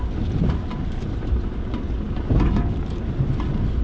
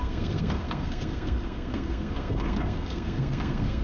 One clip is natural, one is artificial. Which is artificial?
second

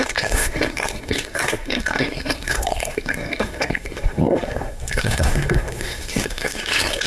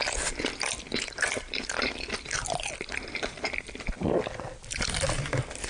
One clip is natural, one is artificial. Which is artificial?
first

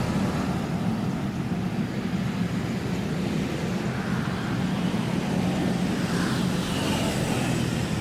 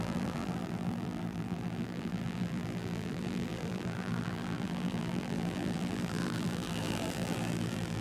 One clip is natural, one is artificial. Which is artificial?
second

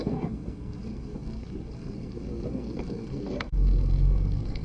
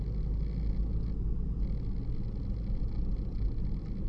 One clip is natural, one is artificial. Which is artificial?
first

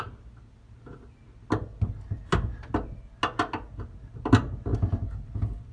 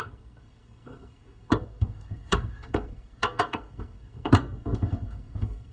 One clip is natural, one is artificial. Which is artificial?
second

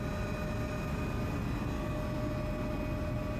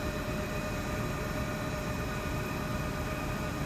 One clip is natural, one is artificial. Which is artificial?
second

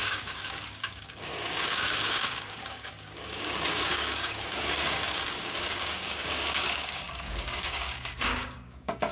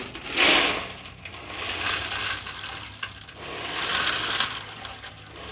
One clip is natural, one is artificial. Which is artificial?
first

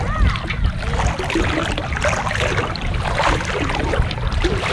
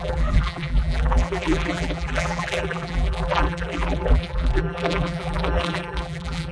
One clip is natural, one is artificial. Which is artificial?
second